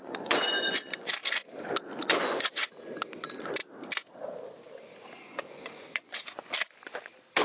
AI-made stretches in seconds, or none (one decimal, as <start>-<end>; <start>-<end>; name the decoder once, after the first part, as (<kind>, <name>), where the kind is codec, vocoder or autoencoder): 0.0-1.1 (vocoder, Vocos); 2.0-2.7; 5.2-6.5